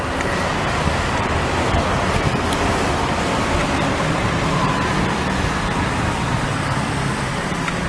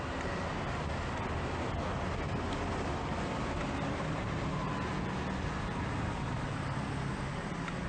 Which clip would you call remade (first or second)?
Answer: first